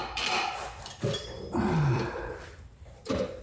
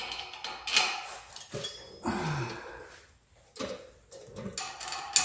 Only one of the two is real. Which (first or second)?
second